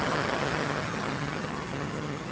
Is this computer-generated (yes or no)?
yes